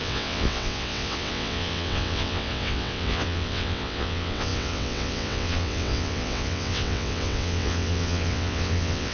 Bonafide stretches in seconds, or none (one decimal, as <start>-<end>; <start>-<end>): none